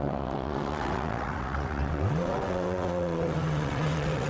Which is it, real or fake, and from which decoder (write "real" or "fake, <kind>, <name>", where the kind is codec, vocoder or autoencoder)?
fake, vocoder, WaveNeXt